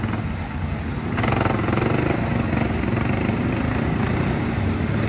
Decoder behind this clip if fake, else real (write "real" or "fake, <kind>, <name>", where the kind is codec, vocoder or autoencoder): real